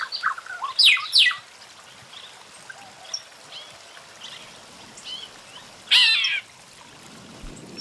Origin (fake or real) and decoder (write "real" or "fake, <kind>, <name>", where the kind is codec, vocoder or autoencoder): real